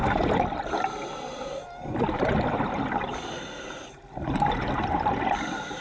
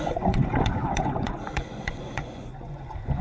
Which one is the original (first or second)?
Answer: first